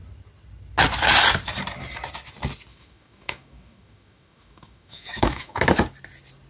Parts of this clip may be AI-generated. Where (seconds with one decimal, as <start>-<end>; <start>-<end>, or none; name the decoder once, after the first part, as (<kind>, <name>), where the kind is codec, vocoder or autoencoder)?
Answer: 2.7-5.6 (autoencoder, DAC-VAE)